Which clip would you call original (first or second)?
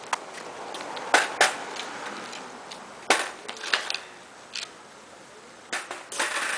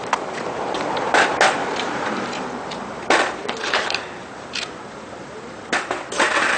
first